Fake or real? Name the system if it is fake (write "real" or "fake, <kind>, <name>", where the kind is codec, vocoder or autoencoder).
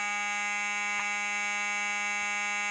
real